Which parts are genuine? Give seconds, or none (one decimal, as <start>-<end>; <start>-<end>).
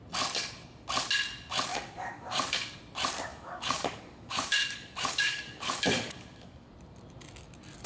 0.0-1.7; 2.8-3.3; 6.7-7.9